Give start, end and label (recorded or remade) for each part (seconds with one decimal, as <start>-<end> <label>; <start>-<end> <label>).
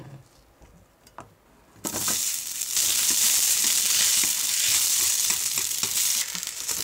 0.0-2.0 recorded; 2.0-4.1 remade; 4.1-6.8 recorded